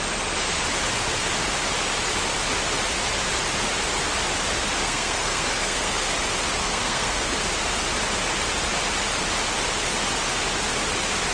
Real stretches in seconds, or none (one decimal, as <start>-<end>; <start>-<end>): 0.0-4.8; 6.1-6.6; 7.3-11.3